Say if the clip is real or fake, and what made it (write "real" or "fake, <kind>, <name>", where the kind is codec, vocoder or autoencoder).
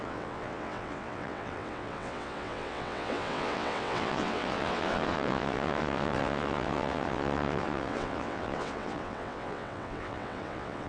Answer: fake, vocoder, WaveNeXt